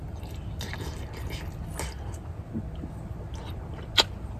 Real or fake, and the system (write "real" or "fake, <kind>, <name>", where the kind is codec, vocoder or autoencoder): real